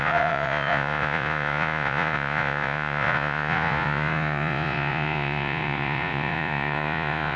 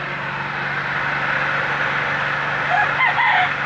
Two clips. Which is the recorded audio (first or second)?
second